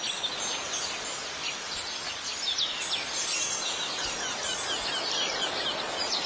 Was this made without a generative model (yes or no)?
yes